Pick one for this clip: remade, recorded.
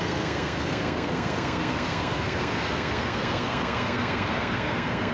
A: remade